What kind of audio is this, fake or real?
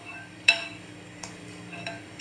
fake